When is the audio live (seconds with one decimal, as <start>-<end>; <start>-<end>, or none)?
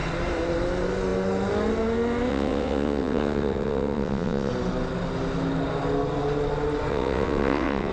0.0-2.3; 4.5-6.9